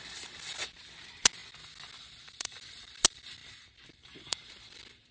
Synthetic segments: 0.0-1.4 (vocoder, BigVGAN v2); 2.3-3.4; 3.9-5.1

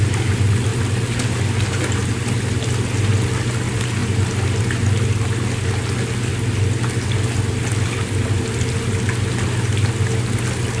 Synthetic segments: none

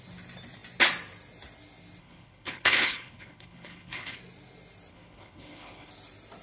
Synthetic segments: 2.0-4.2 (codec, HILCodec); 4.9-5.9

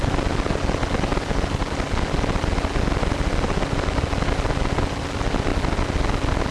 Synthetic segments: none

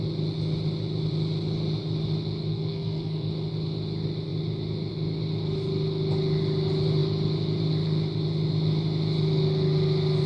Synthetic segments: 2.5-3.3 (codec, SNAC)

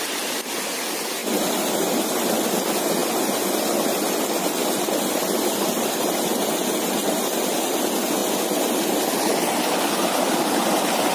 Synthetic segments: none

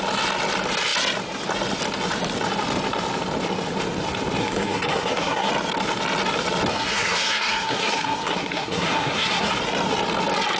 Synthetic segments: 4.4-5.5 (codec, SNAC); 6.7-9.5